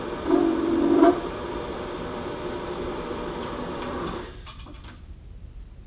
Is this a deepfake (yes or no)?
yes